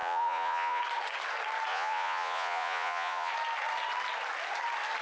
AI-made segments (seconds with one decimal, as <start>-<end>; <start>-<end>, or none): 0.0-0.8; 1.7-3.3